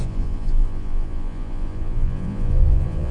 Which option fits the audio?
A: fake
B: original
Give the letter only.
A